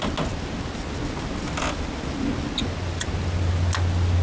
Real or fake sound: real